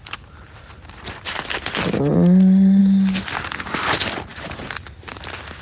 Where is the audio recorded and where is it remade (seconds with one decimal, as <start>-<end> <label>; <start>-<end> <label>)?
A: 0.0-4.3 recorded; 4.3-5.1 remade; 5.1-5.6 recorded